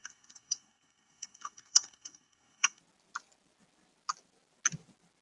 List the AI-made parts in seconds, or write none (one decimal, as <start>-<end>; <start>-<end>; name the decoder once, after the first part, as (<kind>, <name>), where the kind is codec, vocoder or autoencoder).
0.0-2.8 (codec, SNAC)